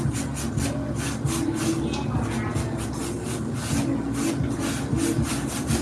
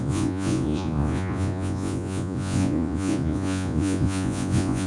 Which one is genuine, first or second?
first